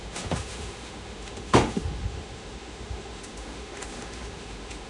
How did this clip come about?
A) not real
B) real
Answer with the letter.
A